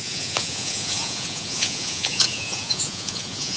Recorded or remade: remade